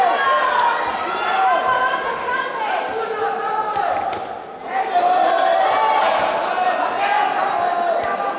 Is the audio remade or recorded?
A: recorded